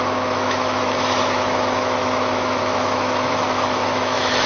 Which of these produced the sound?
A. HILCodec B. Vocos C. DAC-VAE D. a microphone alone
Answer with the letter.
C